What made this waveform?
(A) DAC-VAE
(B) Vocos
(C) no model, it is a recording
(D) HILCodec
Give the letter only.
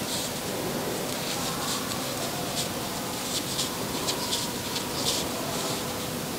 C